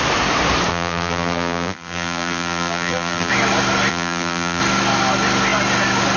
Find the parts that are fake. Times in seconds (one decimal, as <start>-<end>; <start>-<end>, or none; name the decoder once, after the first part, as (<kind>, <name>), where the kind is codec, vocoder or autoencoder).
0.7-3.3 (vocoder, BigVGAN v2); 3.9-4.6